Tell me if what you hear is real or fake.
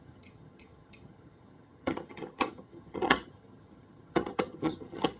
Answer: fake